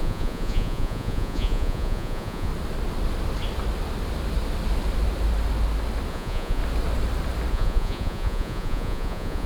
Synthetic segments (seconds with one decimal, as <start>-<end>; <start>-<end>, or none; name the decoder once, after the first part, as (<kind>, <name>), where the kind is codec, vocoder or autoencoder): 0.0-2.5 (vocoder, Vocos); 6.1-6.6; 7.5-9.5